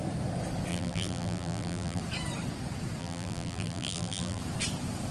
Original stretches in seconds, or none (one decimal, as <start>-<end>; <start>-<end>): 0.0-0.7; 2.0-3.0; 4.4-5.1